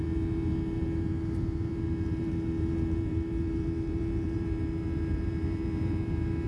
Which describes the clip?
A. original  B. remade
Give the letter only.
B